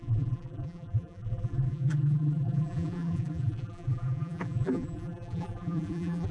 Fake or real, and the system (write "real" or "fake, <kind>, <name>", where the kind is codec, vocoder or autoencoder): fake, vocoder, BigVGAN v2